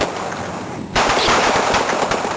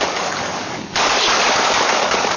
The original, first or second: first